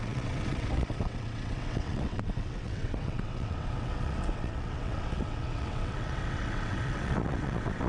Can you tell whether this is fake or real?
fake